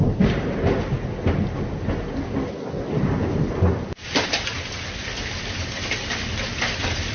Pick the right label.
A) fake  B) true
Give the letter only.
B